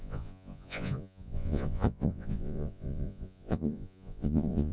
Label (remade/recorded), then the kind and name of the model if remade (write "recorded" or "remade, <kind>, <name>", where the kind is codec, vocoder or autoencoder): remade, vocoder, Vocos